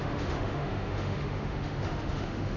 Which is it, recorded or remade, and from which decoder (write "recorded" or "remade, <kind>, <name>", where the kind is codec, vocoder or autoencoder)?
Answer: remade, autoencoder, DAC-VAE